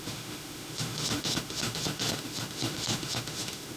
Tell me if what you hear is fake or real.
fake